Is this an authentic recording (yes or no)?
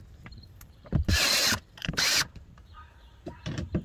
no